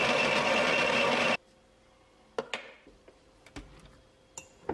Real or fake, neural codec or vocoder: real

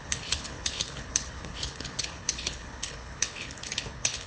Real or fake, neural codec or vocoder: fake, codec, HILCodec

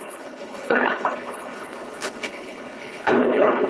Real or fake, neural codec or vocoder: fake, codec, HILCodec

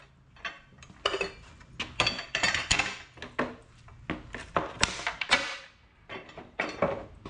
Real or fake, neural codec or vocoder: real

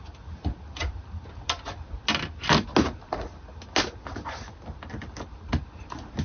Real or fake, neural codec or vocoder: real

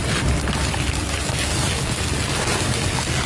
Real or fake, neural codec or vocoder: real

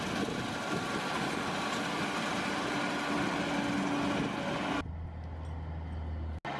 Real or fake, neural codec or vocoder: real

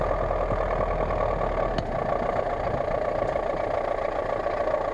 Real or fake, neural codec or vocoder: real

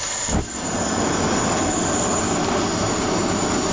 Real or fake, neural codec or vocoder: real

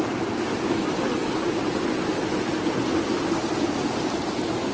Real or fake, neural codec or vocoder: real